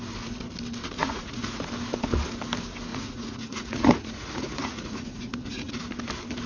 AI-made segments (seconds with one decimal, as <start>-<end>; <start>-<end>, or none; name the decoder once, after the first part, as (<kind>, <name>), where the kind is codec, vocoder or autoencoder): 1.0-1.6 (vocoder, Vocos); 2.9-5.8